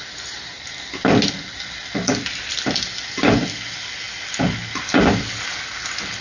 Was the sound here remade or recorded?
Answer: recorded